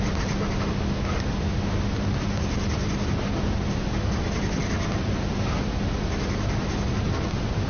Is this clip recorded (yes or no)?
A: yes